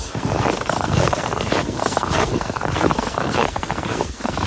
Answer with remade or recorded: remade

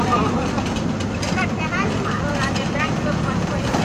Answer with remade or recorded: recorded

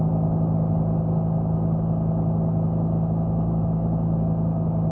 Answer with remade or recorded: recorded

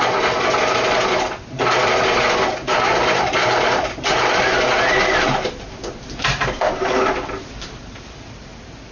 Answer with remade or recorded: recorded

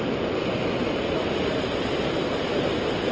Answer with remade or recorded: recorded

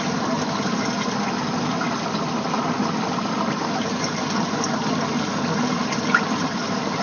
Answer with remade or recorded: recorded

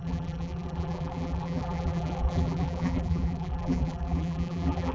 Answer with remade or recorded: remade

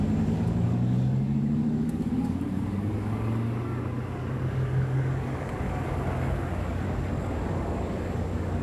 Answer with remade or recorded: remade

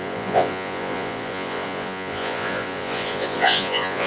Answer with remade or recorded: remade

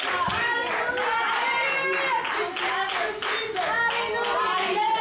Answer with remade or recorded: recorded